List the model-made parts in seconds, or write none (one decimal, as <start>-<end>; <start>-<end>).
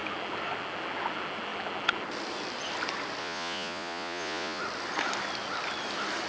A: 3.2-4.6